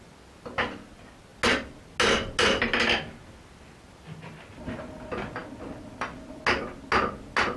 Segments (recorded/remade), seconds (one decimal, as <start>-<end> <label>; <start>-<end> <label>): 0.0-7.6 recorded